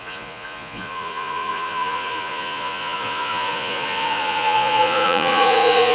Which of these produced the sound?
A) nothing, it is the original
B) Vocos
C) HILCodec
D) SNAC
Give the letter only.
B